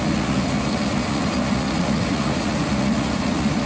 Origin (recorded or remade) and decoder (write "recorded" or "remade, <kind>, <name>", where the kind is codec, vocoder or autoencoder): remade, vocoder, Vocos